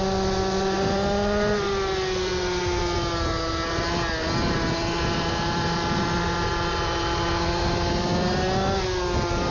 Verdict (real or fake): real